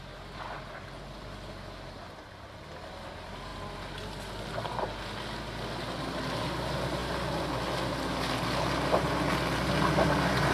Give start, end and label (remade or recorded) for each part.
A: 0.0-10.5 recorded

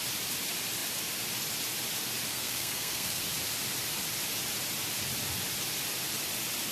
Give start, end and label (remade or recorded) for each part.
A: 0.0-2.3 recorded; 2.3-3.2 remade; 3.2-6.7 recorded

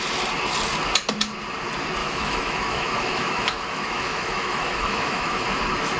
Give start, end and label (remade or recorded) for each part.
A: 0.0-2.0 recorded; 2.0-5.6 remade; 5.6-6.0 recorded

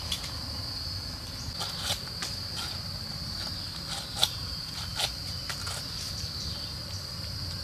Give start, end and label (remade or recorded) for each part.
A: 0.0-4.2 recorded; 4.2-4.7 remade; 4.7-7.6 recorded